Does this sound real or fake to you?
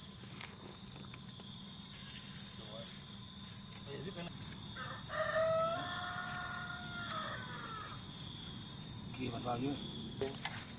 real